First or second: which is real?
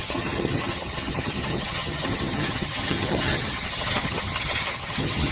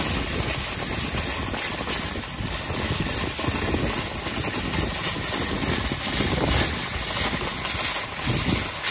second